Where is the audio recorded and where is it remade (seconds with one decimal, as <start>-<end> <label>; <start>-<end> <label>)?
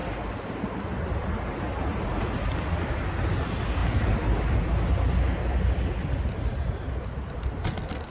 0.0-1.6 remade; 1.6-8.1 recorded